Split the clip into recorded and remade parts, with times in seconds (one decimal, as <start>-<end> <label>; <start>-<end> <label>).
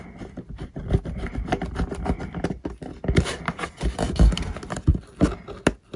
0.0-6.0 recorded